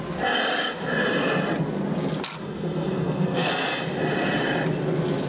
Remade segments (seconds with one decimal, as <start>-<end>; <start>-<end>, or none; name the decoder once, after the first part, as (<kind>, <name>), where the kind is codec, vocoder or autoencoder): 2.4-3.5 (codec, SNAC)